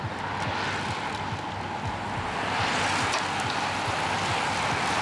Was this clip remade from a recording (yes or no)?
no